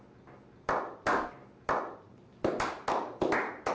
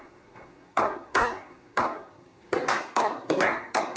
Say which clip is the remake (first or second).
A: second